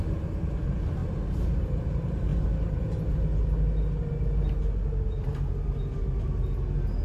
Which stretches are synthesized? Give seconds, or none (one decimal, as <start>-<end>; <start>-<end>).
none